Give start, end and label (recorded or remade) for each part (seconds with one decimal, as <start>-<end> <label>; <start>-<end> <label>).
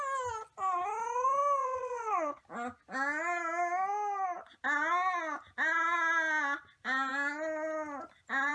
0.0-1.6 recorded; 1.6-2.4 remade; 2.4-8.5 recorded